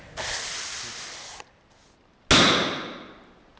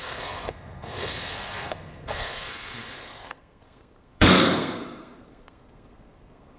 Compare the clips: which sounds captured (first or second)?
first